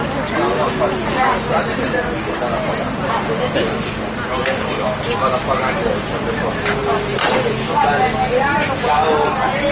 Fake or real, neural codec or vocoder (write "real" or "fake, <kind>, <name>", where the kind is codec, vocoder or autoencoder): real